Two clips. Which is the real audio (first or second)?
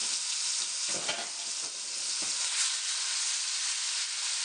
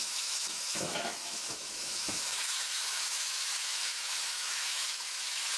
first